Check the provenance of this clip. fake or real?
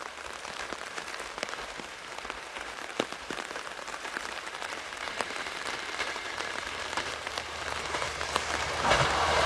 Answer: fake